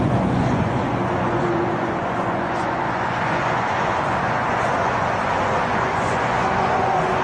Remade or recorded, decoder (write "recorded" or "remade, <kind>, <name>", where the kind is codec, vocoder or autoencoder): remade, vocoder, Vocos